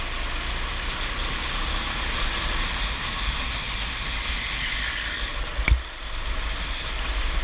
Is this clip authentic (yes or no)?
yes